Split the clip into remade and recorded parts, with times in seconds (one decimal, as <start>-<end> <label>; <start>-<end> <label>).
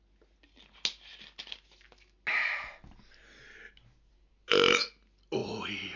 0.0-6.0 recorded